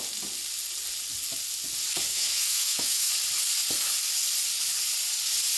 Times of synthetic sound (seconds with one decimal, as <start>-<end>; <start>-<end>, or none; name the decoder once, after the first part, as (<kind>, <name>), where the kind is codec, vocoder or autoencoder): 2.1-3.1 (autoencoder, DAC-VAE)